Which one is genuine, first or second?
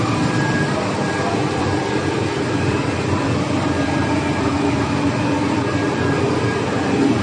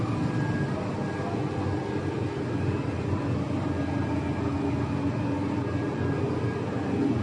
second